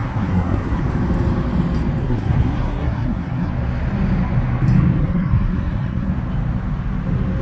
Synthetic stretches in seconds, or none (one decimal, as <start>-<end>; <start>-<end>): 0.0-0.8; 2.0-3.5; 5.0-6.1